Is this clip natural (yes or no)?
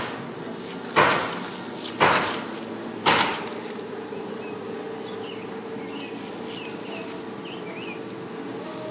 yes